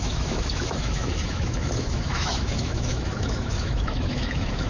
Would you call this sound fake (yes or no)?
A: yes